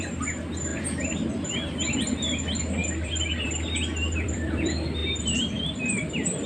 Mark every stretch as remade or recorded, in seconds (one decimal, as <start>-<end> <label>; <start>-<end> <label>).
0.0-0.7 remade; 0.7-1.3 recorded; 1.3-6.5 remade